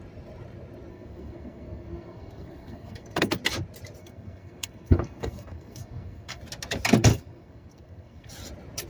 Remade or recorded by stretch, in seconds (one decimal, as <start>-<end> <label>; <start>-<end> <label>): 0.0-0.9 recorded; 0.9-3.3 remade; 3.3-4.0 recorded; 4.0-6.4 remade; 6.4-7.1 recorded; 7.1-8.3 remade; 8.3-8.9 recorded